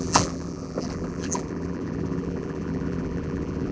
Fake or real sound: fake